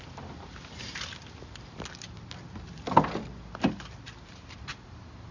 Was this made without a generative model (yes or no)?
yes